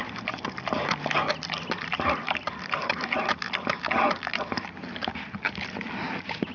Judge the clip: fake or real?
real